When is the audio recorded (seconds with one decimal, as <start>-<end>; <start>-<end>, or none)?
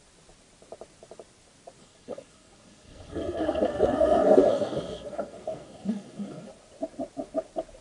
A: 0.0-1.8; 6.5-7.8